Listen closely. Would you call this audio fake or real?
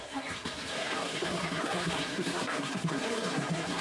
fake